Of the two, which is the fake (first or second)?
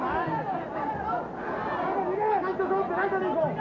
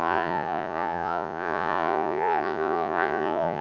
second